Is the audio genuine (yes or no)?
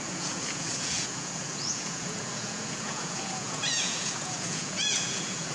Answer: no